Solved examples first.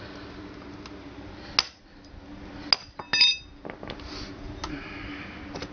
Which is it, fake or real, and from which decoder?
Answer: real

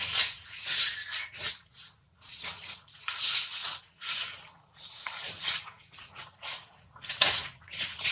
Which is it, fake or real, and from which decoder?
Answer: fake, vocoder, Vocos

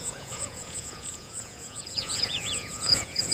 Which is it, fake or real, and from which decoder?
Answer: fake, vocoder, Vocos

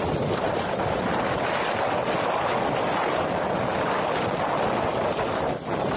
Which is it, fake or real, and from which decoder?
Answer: real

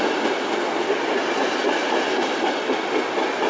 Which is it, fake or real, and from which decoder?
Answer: real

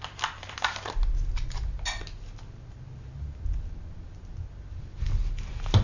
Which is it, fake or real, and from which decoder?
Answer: real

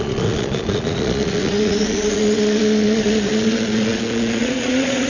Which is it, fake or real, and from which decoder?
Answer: fake, vocoder, Vocos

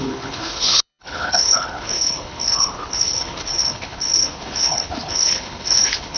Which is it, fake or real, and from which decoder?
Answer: fake, codec, HILCodec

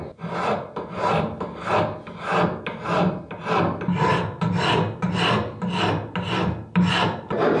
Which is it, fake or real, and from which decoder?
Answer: real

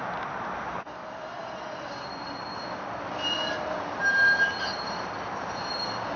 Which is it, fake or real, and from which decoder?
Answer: real